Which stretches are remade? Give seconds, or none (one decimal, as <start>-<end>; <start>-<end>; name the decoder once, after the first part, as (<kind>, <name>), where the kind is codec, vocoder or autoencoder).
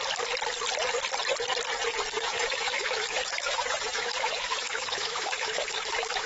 2.1-6.3 (autoencoder, DAC-VAE)